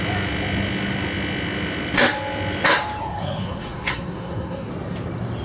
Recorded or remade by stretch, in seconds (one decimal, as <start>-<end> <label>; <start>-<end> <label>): 0.0-3.0 recorded; 3.0-4.7 remade; 4.7-5.4 recorded